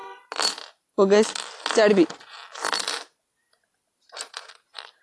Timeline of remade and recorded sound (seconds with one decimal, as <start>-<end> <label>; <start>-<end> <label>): 0.0-5.0 recorded